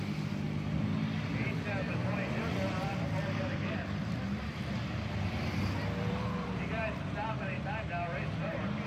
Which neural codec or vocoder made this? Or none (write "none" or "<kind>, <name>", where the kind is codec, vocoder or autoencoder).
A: none